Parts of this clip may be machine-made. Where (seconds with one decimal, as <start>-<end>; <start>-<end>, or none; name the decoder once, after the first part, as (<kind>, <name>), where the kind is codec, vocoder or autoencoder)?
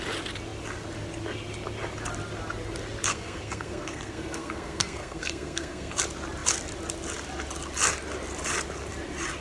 3.1-6.0 (codec, SNAC)